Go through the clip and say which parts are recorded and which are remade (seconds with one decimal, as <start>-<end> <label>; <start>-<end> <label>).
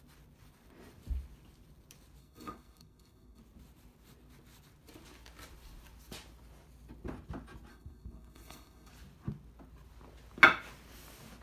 0.0-2.2 recorded; 2.2-3.4 remade; 3.4-7.7 recorded; 7.7-8.9 remade; 8.9-11.4 recorded